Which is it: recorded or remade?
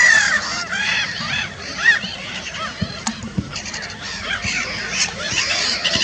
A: remade